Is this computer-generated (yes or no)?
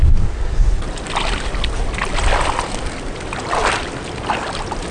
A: no